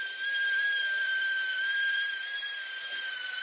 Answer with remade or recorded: remade